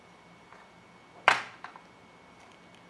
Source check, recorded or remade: remade